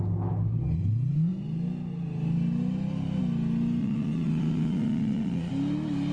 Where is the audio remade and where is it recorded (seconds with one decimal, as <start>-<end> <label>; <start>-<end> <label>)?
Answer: 0.0-3.8 recorded; 3.8-5.5 remade; 5.5-6.1 recorded